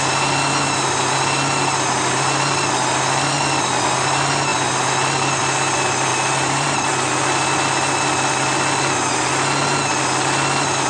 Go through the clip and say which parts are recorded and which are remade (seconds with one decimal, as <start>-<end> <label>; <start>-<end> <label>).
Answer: 0.0-6.1 recorded; 6.1-6.9 remade; 6.9-10.9 recorded